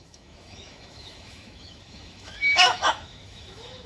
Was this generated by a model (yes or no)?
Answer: yes